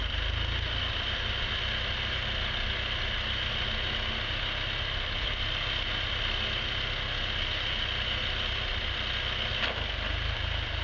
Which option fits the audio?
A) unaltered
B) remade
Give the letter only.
A